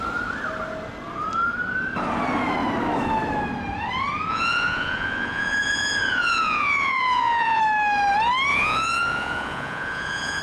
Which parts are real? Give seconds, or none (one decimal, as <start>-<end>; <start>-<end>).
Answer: 0.0-4.3; 7.6-8.5